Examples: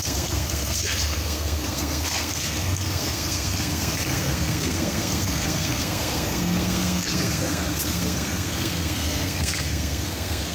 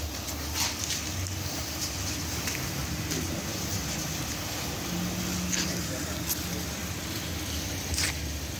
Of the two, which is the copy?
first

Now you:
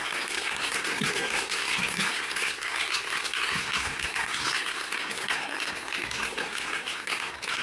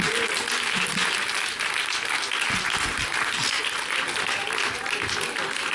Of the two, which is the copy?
first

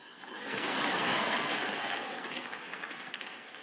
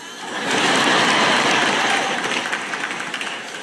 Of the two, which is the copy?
first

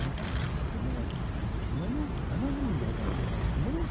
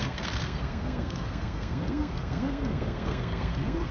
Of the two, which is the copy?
second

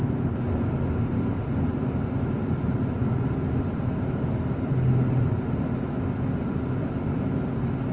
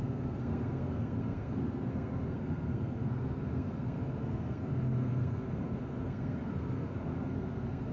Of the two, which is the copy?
second